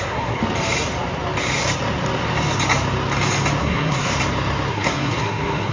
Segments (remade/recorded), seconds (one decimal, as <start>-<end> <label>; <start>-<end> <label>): 0.0-0.4 remade; 0.4-3.6 recorded; 3.6-4.1 remade; 4.1-4.7 recorded; 4.7-5.7 remade